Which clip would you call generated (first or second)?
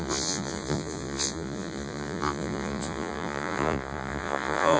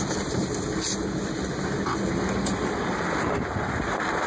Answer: first